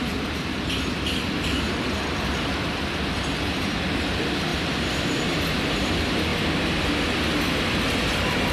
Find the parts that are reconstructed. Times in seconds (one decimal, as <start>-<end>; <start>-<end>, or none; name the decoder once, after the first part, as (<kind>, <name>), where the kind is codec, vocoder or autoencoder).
none